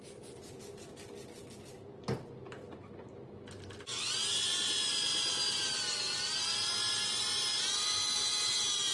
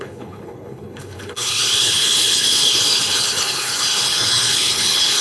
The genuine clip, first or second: first